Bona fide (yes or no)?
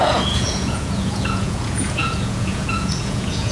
no